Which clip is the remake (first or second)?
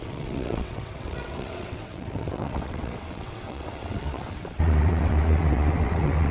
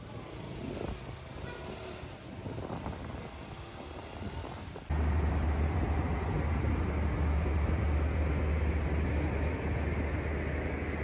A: first